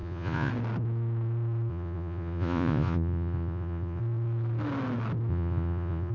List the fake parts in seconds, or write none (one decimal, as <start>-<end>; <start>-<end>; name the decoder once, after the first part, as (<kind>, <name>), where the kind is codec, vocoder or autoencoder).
0.0-0.5 (vocoder, Vocos); 1.7-4.0; 5.3-6.1